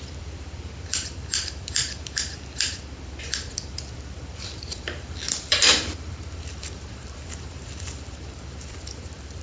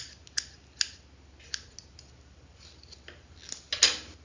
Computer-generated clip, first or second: first